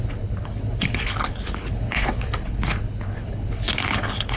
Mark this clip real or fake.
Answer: fake